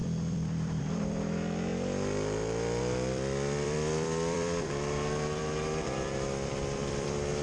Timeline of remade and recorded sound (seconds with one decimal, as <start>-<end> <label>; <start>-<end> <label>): 0.0-1.7 remade; 1.7-2.8 recorded; 2.8-7.4 remade